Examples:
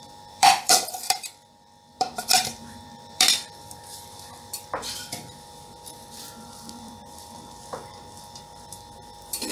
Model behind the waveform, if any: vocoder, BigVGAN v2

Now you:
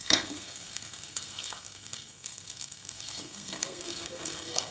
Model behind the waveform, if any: codec, SNAC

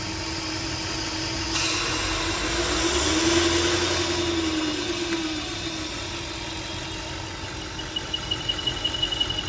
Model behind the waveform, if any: none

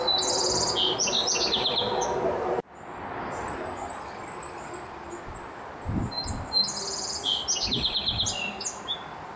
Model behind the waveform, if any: none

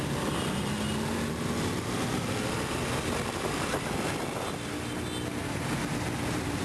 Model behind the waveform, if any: none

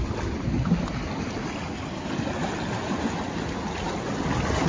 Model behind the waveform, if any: none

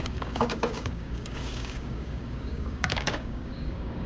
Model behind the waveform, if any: codec, DAC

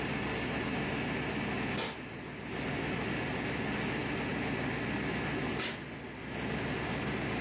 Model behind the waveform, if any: none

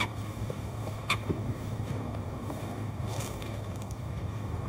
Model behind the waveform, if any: codec, DAC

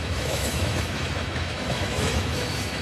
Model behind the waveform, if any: autoencoder, DAC-VAE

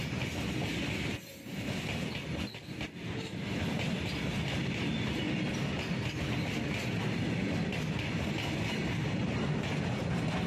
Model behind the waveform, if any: none